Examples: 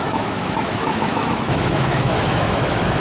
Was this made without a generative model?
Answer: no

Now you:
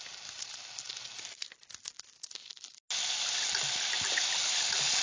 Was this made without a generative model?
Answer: yes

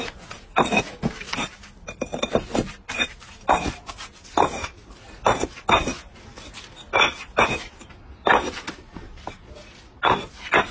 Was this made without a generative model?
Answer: yes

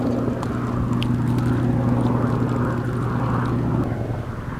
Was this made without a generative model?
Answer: yes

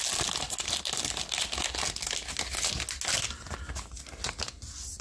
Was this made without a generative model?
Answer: yes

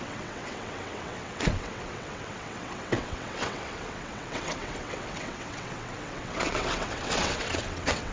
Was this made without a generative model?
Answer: no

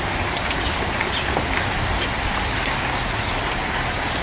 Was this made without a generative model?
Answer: yes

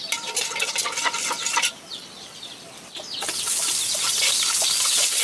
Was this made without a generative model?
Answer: yes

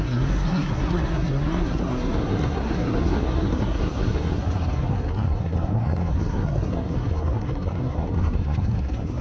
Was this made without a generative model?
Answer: no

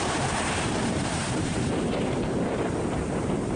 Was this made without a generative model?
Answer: no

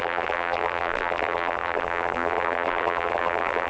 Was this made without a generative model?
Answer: no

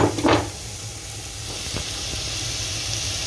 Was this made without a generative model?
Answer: yes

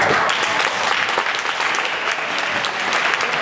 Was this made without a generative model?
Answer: yes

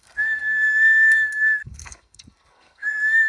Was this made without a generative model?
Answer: no